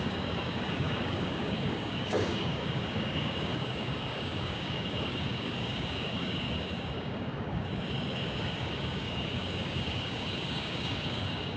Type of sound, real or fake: fake